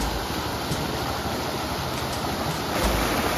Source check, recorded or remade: recorded